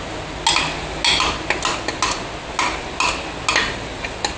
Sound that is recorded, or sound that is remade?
recorded